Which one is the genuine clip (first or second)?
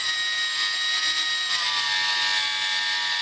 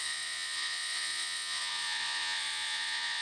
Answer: first